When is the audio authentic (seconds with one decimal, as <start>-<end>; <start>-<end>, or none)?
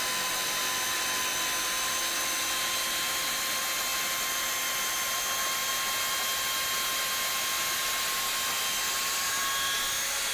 0.0-10.3